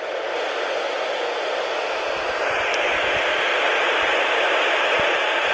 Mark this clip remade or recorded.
recorded